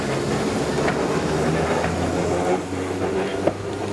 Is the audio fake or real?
real